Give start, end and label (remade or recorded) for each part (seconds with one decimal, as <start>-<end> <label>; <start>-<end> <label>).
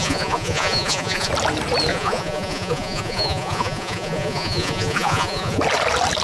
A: 0.0-1.3 remade; 1.3-1.9 recorded; 1.9-5.6 remade; 5.6-6.2 recorded